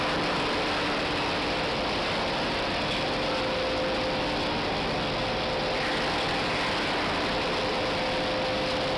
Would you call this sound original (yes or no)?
yes